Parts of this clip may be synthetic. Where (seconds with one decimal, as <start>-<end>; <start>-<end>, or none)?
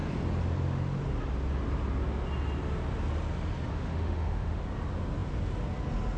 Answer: 3.7-4.6